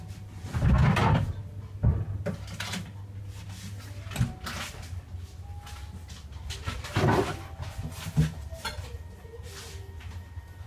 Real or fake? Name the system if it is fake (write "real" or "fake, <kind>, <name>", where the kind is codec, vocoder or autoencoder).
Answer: real